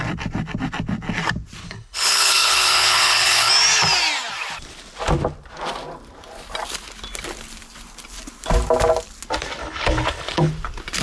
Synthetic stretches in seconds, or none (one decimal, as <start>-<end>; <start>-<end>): 1.6-3.5; 9.6-10.5